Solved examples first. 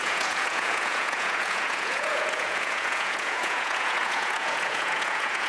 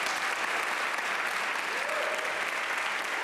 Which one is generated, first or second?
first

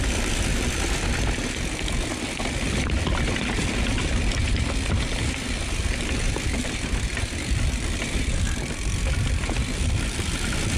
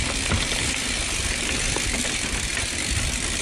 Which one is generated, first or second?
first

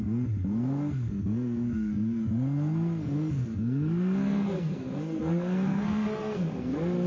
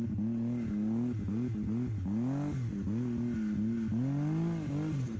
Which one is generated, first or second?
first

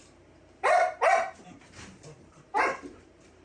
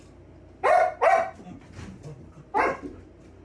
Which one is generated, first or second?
first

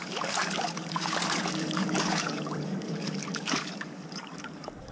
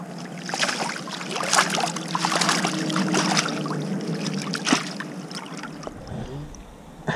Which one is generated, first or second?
first